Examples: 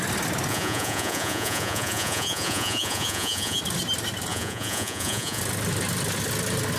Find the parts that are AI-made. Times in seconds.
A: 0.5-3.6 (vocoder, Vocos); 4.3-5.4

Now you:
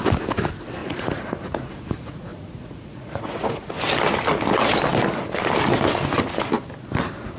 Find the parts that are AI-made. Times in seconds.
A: 0.8-3.7 (vocoder, Vocos)

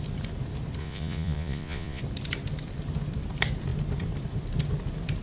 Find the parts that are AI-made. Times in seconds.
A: 0.8-2.0 (vocoder, Vocos)

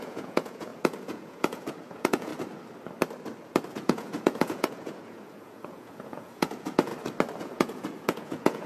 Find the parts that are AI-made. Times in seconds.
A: 0.0-2.3 (vocoder, Vocos); 3.7-6.9; 7.4-8.7